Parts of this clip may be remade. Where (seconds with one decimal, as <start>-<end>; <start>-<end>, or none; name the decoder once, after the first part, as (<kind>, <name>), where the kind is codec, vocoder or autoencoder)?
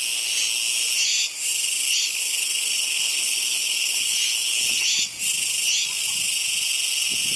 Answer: 1.8-4.9 (codec, HILCodec)